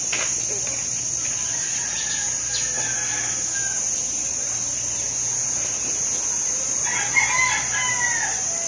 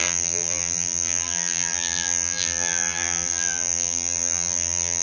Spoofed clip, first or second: second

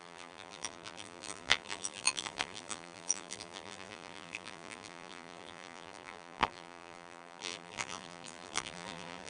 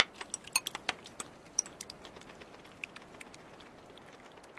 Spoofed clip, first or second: first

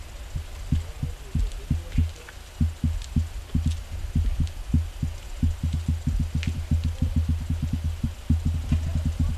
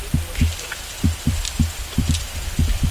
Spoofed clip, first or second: second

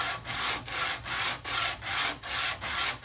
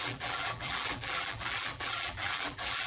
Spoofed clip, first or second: second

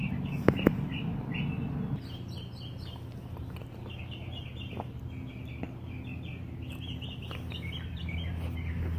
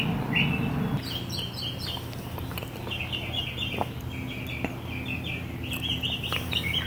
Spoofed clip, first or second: first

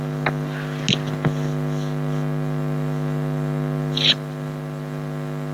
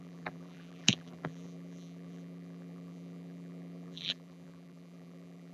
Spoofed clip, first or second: second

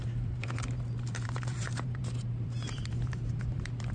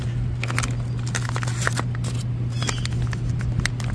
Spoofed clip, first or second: first